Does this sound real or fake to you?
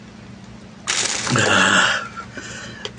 real